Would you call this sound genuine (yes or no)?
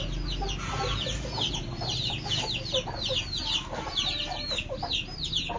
yes